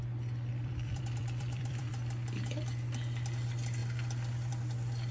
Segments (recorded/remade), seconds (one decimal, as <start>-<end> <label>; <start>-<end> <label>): 0.0-0.5 recorded; 0.5-1.9 remade; 1.9-5.1 recorded